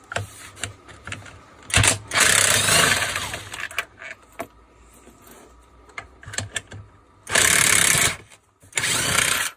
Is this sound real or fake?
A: real